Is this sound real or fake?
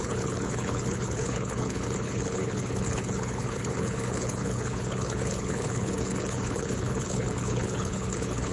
fake